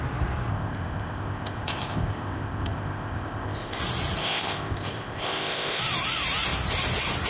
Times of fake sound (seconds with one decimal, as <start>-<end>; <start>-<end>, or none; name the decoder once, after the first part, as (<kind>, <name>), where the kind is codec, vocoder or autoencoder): 0.5-3.8 (codec, ZipCodec); 4.2-5.8